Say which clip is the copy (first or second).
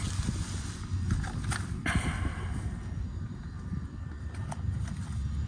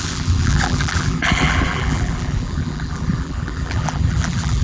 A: second